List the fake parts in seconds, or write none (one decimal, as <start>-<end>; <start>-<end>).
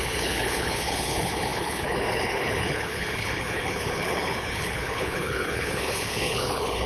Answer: 0.0-6.9